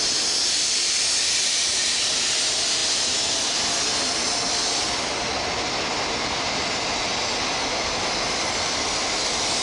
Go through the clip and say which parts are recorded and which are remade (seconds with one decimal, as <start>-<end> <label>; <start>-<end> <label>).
0.0-9.6 recorded